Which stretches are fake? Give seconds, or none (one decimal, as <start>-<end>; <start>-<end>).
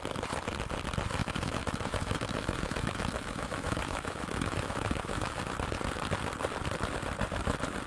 1.2-5.4